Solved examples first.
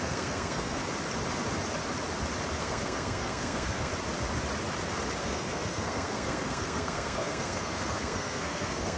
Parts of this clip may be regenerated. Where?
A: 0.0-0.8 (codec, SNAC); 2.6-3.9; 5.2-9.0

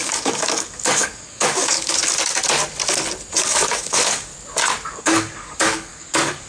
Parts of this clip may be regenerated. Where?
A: 0.0-2.0 (codec, DAC); 3.3-4.3; 4.9-6.5

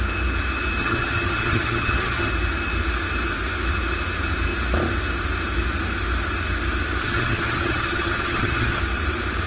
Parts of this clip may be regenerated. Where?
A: 0.8-2.3 (vocoder, HiFi-GAN); 7.0-8.8

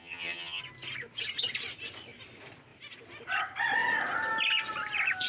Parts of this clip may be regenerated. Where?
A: 0.0-0.6 (vocoder, HiFi-GAN)